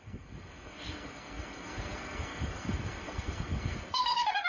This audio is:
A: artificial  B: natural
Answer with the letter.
A